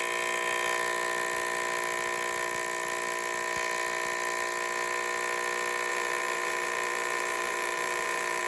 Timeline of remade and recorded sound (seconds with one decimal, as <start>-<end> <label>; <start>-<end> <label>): 0.0-5.9 recorded; 5.9-8.5 remade